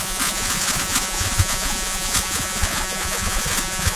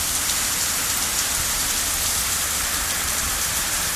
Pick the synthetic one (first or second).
first